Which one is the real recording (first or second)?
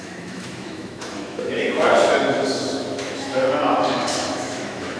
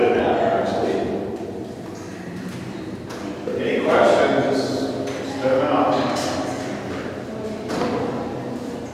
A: second